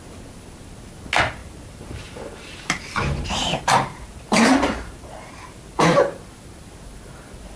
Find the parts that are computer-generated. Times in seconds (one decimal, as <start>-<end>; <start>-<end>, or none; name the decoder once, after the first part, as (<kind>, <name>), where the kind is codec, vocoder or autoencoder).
1.4-6.0 (vocoder, BigVGAN v2)